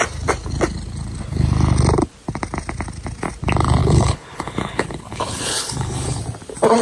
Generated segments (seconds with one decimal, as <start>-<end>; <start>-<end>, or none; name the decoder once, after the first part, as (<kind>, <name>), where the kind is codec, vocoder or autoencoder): 3.8-6.2 (codec, HILCodec)